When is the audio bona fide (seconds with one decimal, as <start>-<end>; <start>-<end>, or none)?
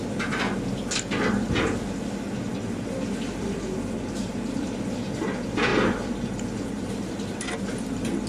0.0-2.5; 4.8-8.3